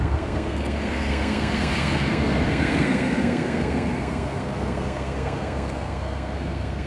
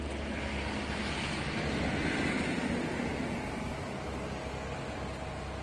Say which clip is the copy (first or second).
first